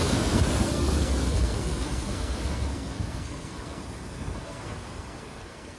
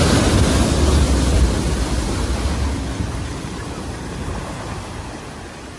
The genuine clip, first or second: second